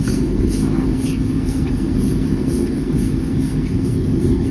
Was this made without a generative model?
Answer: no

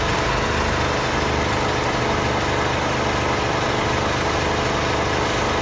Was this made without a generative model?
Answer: yes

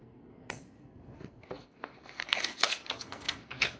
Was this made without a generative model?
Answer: no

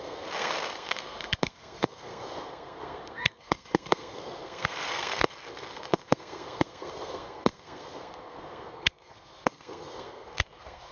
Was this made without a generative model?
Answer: no